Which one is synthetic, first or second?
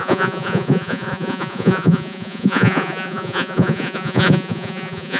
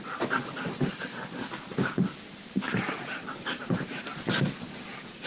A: first